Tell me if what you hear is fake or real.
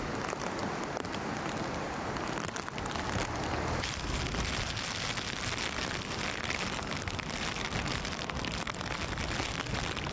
real